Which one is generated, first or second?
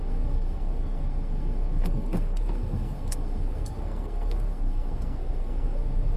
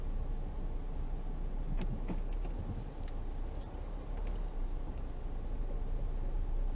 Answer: first